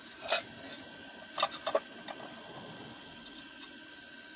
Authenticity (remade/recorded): recorded